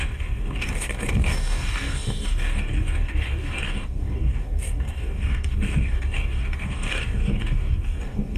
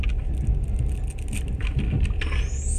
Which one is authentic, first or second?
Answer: second